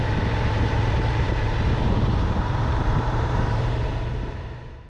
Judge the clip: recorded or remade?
remade